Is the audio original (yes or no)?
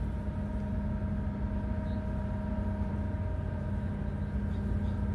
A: yes